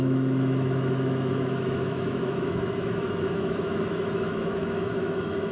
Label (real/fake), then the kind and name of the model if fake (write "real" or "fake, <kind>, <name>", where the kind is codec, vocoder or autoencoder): fake, autoencoder, DAC-VAE